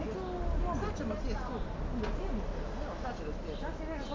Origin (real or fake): real